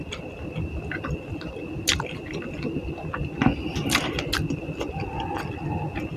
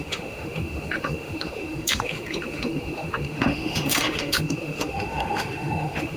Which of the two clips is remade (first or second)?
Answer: second